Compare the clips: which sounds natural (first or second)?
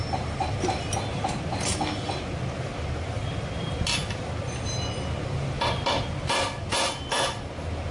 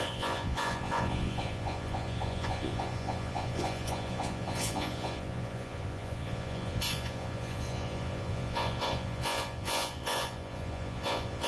first